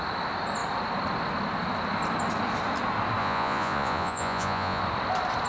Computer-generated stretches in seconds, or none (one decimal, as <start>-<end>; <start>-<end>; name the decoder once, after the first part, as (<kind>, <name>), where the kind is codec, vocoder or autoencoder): 3.2-4.8 (vocoder, Vocos)